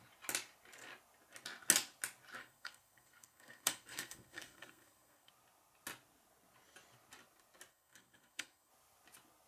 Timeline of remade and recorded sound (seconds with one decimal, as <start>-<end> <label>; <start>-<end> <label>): 0.0-2.4 recorded; 2.4-5.3 remade; 5.3-7.7 recorded; 7.7-8.7 remade; 8.7-9.5 recorded